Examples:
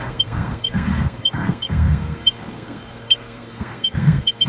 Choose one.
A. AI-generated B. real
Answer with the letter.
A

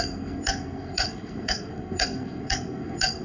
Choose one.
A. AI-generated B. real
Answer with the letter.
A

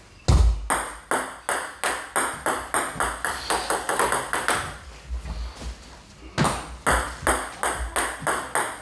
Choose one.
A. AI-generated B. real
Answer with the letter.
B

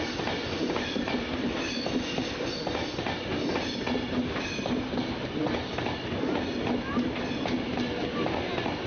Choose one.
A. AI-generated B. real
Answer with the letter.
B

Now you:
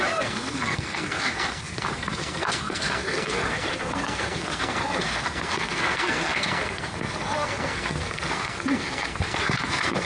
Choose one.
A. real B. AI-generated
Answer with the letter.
B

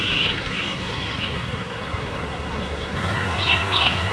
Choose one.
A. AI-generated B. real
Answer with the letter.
A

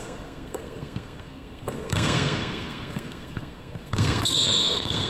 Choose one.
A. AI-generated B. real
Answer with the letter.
A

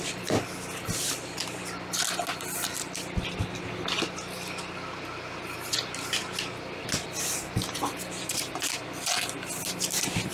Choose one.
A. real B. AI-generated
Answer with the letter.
A